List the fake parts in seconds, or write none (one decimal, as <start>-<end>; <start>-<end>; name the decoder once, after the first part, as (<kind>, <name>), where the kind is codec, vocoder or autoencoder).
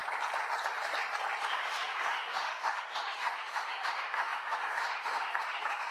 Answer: 1.4-5.9 (autoencoder, DAC-VAE)